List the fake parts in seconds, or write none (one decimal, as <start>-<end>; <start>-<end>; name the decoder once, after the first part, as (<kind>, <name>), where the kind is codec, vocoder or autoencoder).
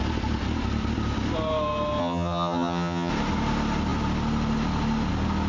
2.0-3.1 (vocoder, HiFi-GAN)